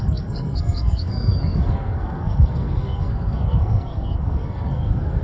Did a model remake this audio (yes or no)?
yes